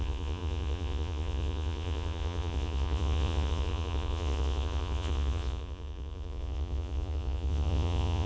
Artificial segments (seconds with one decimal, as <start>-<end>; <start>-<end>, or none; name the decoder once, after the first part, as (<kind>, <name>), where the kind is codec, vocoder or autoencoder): 0.0-8.3 (vocoder, Vocos)